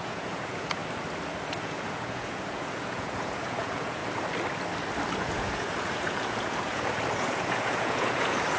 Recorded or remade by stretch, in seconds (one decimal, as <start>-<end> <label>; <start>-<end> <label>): 0.0-0.8 remade; 0.8-1.6 recorded; 1.6-4.0 remade; 4.0-5.2 recorded; 5.2-8.6 remade